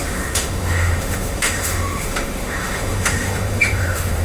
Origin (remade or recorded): remade